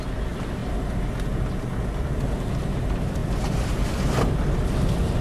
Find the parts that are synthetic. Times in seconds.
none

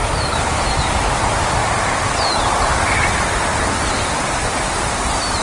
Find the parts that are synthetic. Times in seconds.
0.0-5.4 (vocoder, BigVGAN v2)

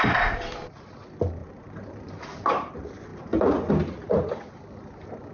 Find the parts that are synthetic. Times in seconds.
1.4-2.7 (vocoder, BigVGAN v2); 3.1-3.7

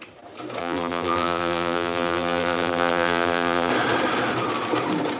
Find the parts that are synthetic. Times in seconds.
0.6-3.7 (vocoder, BigVGAN v2)

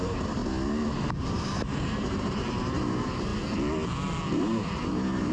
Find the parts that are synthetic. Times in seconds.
0.0-0.4 (vocoder, BigVGAN v2); 1.0-3.3; 4.3-5.3

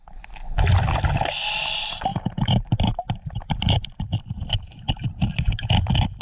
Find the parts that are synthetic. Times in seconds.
2.1-5.8 (vocoder, BigVGAN v2)